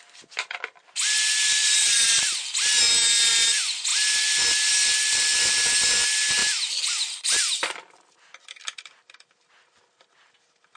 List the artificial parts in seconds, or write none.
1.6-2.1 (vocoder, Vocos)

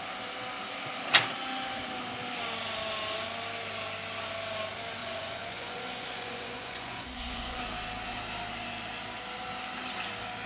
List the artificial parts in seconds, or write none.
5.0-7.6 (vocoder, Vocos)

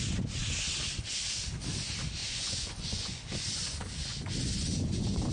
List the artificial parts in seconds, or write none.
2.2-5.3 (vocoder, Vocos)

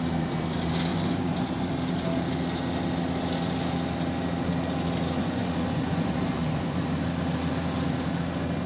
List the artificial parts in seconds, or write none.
0.9-1.7 (vocoder, Vocos); 5.2-6.8

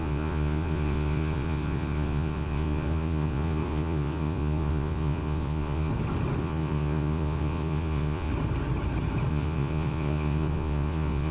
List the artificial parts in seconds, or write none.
0.0-5.9 (vocoder, Vocos); 6.4-8.3; 9.3-11.3

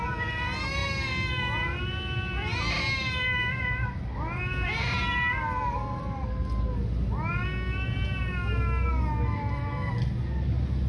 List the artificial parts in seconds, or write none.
none

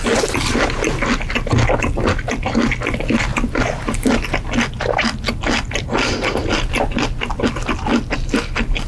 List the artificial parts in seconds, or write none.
none